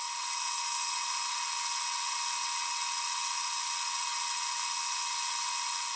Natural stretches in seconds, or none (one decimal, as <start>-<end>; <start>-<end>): none